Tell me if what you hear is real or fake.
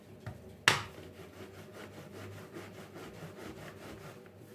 real